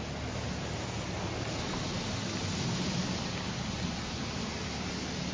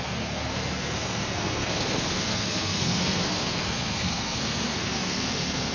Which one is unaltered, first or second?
first